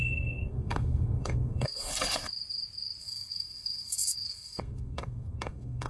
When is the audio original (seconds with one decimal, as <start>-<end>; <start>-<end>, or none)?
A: 1.9-3.0

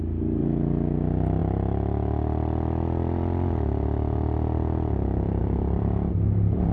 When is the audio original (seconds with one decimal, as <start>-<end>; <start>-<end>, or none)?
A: 0.0-6.7

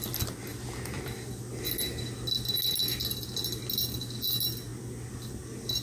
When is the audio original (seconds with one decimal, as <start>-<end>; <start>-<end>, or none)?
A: 0.0-5.8

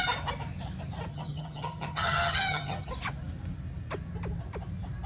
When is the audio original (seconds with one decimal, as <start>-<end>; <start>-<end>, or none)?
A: 0.0-1.1; 2.9-5.1

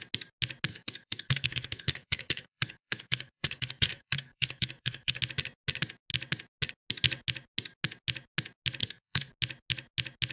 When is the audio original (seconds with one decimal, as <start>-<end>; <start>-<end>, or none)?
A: 0.0-0.7; 5.2-8.8; 9.3-10.3

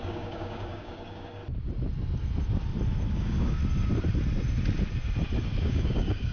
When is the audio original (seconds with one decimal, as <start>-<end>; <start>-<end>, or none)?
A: 1.4-3.1; 3.6-5.6

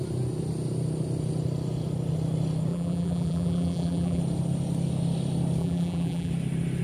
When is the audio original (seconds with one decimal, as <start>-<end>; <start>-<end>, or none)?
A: 0.0-2.7; 4.2-5.6; 6.3-6.8

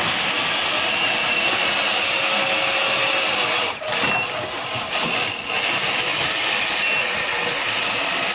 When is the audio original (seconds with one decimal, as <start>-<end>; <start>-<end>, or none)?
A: 0.0-8.3